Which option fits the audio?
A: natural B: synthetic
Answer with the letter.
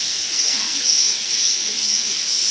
B